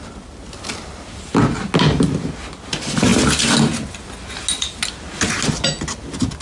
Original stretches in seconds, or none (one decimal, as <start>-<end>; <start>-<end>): 0.0-6.4